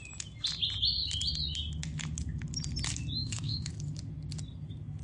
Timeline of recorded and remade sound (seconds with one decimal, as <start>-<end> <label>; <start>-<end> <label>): 0.0-3.2 recorded; 3.2-3.7 remade; 3.7-5.0 recorded